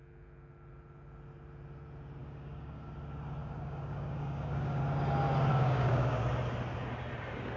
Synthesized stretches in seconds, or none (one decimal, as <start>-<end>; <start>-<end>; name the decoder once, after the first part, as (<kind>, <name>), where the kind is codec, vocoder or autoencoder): 2.2-2.9 (codec, DAC); 3.4-4.8; 5.5-6.2